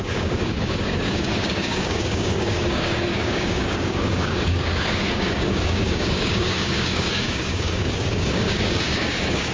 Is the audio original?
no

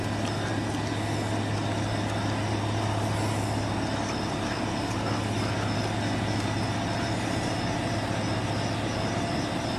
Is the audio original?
yes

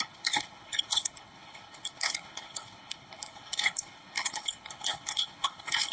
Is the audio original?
no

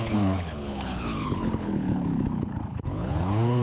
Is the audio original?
no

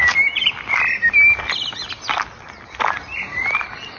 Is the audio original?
yes